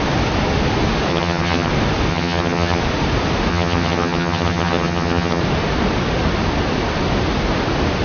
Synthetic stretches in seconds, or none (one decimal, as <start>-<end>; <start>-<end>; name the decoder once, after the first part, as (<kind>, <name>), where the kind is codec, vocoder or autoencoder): 1.1-1.7 (vocoder, HiFi-GAN); 2.1-2.8; 3.5-5.4